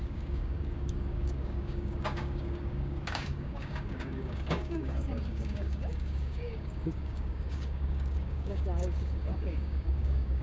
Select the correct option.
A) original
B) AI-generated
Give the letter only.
B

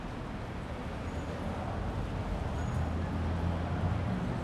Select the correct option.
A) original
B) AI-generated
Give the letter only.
A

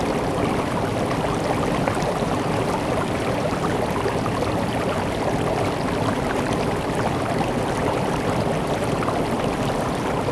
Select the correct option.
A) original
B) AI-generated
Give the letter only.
B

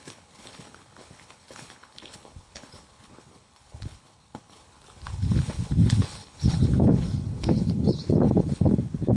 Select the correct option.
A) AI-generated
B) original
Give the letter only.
A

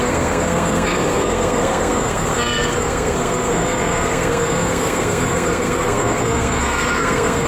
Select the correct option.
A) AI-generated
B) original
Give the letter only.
A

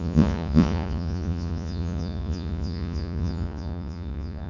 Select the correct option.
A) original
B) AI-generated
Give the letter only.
B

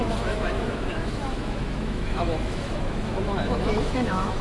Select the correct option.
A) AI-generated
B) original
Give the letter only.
A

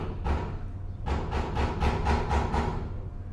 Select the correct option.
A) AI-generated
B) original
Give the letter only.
B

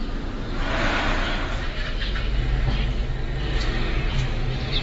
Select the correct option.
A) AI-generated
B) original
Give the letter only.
B